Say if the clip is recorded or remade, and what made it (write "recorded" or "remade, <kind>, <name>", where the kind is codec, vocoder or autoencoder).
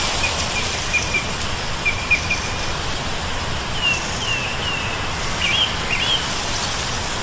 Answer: recorded